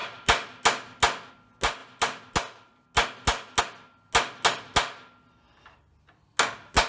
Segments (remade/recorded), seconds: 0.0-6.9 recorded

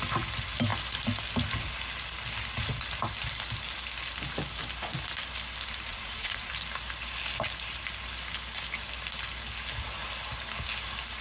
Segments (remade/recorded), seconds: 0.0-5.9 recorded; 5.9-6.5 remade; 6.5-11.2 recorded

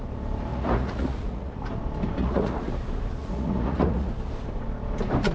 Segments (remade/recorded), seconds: 0.0-0.5 recorded; 0.5-1.6 remade; 1.6-2.2 recorded; 2.2-2.7 remade; 2.7-3.2 recorded; 3.2-4.1 remade; 4.1-5.3 recorded

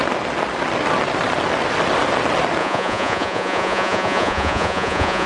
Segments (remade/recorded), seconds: 0.0-2.6 recorded; 2.6-5.3 remade

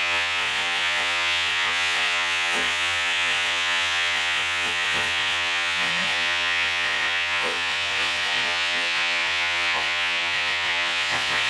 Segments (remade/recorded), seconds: 0.0-11.5 remade

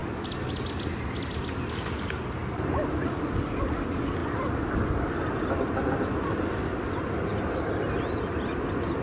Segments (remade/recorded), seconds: 0.0-9.0 recorded